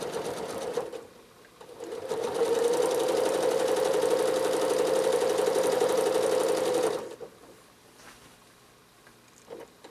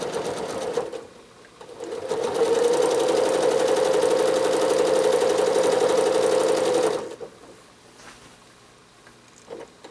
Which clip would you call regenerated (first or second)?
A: first